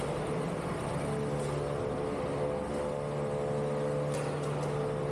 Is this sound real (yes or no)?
yes